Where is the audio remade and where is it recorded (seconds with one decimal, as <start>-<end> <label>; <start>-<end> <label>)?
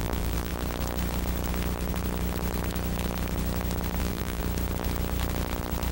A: 0.0-0.5 remade; 0.5-4.0 recorded; 4.0-4.4 remade; 4.4-5.9 recorded